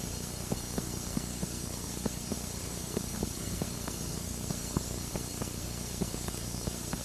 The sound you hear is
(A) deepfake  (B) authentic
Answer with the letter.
A